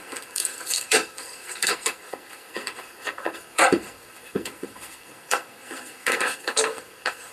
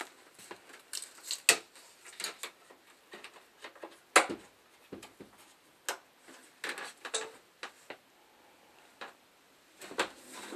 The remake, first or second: first